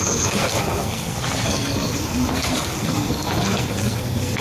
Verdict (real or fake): fake